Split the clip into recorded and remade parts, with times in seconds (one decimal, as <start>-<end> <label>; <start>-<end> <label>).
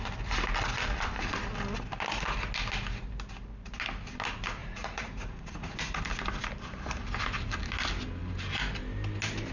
0.0-4.6 recorded; 4.6-6.0 remade; 6.0-9.5 recorded